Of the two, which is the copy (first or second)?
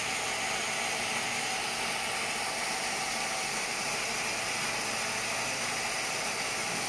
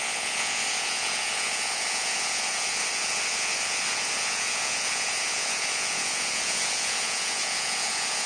second